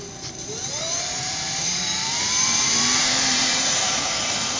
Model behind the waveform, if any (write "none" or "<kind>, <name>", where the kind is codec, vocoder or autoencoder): vocoder, BigVGAN v2